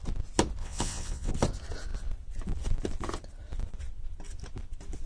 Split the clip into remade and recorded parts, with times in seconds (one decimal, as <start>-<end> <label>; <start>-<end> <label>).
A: 0.0-0.6 recorded; 0.6-1.3 remade; 1.3-5.1 recorded

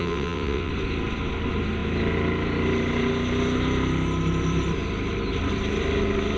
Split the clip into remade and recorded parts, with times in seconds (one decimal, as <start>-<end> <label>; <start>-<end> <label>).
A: 0.0-0.7 remade; 0.7-6.4 recorded

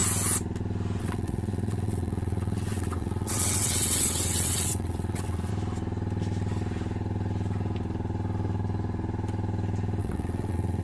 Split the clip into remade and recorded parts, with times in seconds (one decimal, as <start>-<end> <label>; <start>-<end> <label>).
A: 0.0-1.0 recorded; 1.0-5.5 remade; 5.5-10.0 recorded; 10.0-10.8 remade

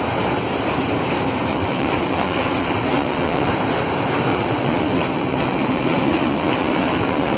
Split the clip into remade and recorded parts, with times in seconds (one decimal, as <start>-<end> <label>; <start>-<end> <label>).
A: 0.0-1.5 recorded; 1.5-3.5 remade; 3.5-4.3 recorded; 4.3-7.4 remade

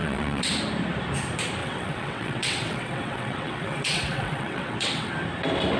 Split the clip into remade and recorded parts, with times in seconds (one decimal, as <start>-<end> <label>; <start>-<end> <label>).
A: 0.0-0.5 remade; 0.5-1.6 recorded; 1.6-5.1 remade; 5.1-5.8 recorded